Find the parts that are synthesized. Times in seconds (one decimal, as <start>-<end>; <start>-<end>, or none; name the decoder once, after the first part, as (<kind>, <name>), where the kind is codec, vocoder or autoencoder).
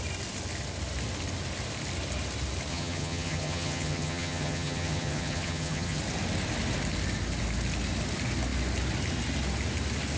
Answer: 2.7-6.0 (vocoder, HiFi-GAN)